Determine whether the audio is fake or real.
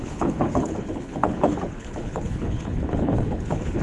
fake